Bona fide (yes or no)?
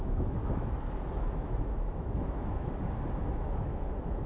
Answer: no